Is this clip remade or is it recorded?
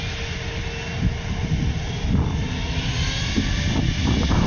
recorded